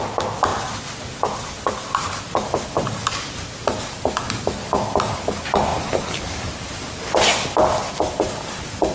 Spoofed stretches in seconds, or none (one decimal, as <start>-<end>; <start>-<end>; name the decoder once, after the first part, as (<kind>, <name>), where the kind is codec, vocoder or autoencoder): none